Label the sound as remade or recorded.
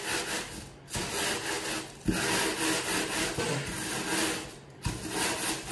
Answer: recorded